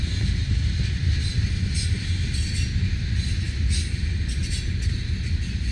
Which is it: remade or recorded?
recorded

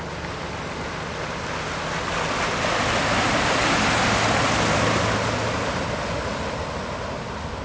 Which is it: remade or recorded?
recorded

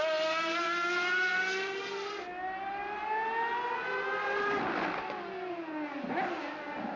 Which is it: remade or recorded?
recorded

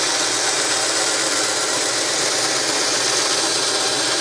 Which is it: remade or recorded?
recorded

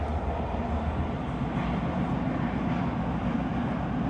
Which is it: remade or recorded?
recorded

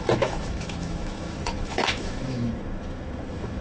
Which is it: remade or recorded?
remade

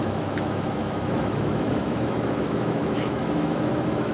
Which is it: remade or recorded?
remade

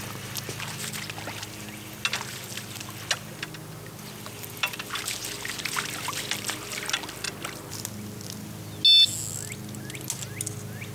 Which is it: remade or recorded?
recorded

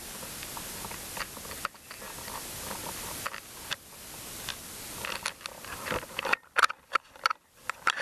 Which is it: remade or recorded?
recorded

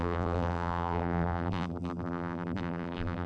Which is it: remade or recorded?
remade